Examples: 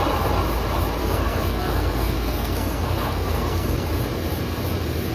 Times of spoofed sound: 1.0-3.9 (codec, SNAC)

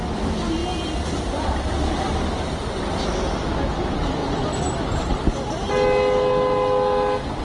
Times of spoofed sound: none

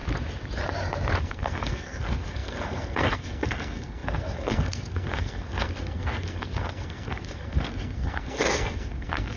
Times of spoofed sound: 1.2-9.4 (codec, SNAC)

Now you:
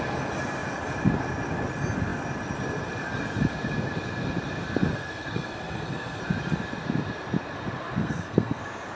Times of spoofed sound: 4.9-6.2 (codec, SNAC); 8.0-8.6

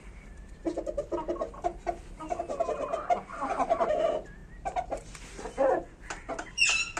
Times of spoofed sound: none

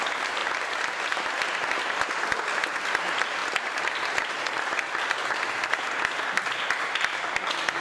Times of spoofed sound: none

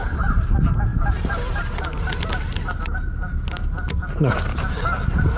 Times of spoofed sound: none

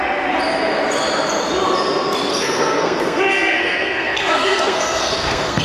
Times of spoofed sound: 2.3-5.6 (codec, SNAC)